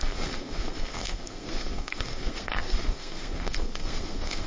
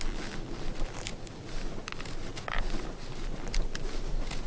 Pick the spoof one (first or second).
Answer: first